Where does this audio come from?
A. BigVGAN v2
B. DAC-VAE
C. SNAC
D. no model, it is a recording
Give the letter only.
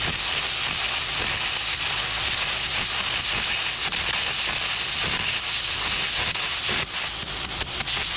D